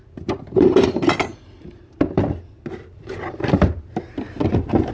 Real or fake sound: real